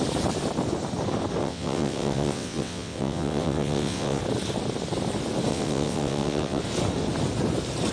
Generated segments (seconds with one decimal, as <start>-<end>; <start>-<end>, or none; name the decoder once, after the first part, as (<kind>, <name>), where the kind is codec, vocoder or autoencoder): 1.4-4.2 (vocoder, WaveNeXt); 5.5-6.6